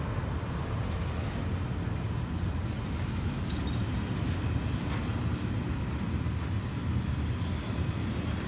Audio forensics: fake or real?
real